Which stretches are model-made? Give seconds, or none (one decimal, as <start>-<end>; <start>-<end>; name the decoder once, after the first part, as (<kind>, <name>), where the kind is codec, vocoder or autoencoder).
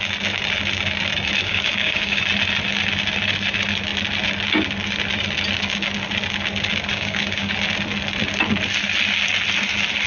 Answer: 1.4-2.2 (codec, DAC); 6.9-7.5